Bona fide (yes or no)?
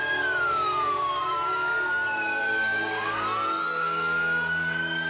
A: no